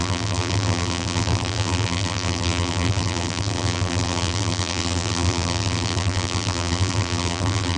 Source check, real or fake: fake